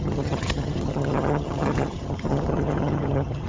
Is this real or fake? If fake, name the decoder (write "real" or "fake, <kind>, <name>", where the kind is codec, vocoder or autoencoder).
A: fake, vocoder, HiFi-GAN